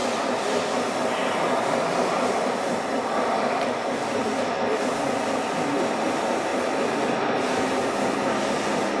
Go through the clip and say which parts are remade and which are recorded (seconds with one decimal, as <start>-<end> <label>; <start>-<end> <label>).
0.0-6.5 remade; 6.5-9.0 recorded